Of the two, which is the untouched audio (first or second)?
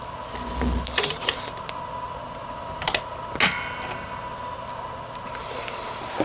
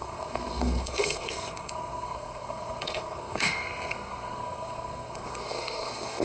first